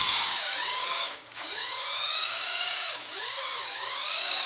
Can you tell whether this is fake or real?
fake